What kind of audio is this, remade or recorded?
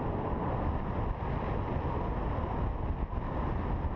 recorded